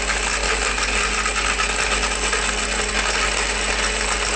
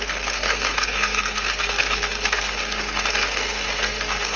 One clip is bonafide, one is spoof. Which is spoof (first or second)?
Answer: second